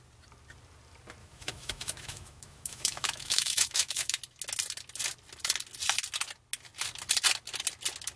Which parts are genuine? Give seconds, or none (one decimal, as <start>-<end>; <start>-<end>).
0.0-1.2; 4.2-8.2